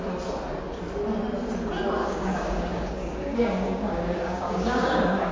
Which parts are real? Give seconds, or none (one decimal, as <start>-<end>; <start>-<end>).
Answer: 0.0-2.0